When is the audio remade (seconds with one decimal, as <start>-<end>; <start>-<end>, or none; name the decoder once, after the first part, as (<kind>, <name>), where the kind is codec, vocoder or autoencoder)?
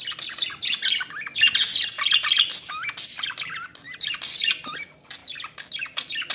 3.7-4.3 (vocoder, BigVGAN v2)